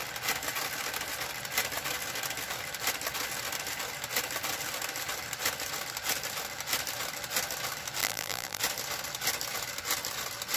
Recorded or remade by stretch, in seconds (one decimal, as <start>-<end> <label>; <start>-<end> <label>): 0.0-8.0 recorded; 8.0-8.6 remade; 8.6-10.6 recorded